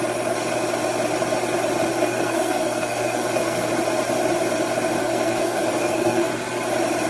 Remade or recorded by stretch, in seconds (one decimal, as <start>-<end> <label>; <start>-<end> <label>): 0.0-1.9 recorded; 1.9-3.7 remade; 3.7-5.0 recorded; 5.0-6.3 remade; 6.3-7.1 recorded

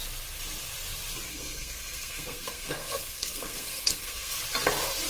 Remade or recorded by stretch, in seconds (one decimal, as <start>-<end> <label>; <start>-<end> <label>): 0.0-1.3 recorded; 1.3-4.4 remade; 4.4-5.1 recorded

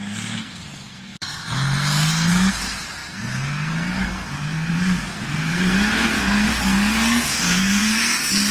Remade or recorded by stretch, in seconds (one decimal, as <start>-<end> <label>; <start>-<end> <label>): 0.0-8.5 remade

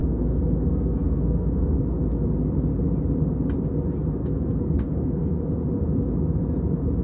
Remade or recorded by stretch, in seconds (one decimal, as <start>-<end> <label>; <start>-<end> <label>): 0.0-1.8 remade; 1.8-4.2 recorded; 4.2-5.5 remade; 5.5-7.0 recorded

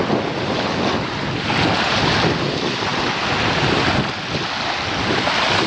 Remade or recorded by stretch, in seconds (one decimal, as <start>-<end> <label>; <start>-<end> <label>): 0.0-5.7 recorded

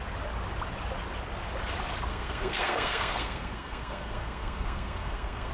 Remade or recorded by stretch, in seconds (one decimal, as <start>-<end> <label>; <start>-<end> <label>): 0.0-2.1 recorded; 2.1-5.5 remade